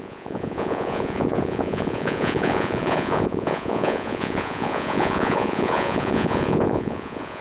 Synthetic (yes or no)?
yes